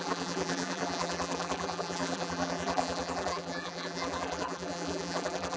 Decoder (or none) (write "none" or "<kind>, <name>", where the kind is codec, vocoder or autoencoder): vocoder, BigVGAN v2